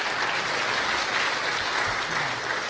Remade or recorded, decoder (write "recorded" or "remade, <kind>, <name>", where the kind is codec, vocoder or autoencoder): recorded